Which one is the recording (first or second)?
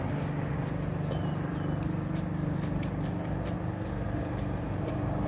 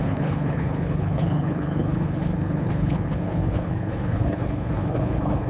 first